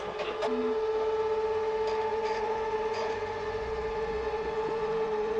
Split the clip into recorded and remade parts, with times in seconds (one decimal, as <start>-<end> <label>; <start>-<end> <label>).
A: 0.0-2.1 recorded; 2.1-5.4 remade